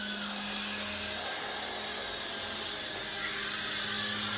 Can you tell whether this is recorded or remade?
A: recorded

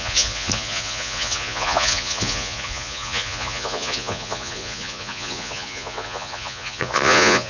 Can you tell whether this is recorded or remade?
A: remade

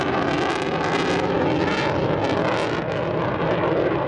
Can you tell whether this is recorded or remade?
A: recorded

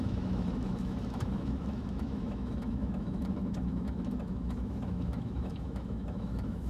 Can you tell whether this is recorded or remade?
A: remade